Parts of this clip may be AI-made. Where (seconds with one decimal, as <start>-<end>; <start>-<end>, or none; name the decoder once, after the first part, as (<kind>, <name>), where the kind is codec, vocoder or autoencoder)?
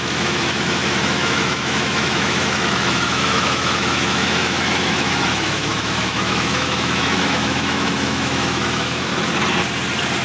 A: 0.0-9.1 (autoencoder, DAC-VAE)